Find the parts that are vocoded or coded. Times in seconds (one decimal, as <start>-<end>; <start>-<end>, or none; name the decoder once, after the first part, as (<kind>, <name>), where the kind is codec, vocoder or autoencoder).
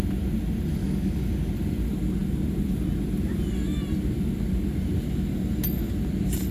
0.7-1.5 (codec, DAC)